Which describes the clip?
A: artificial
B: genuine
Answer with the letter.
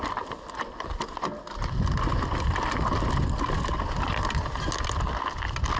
B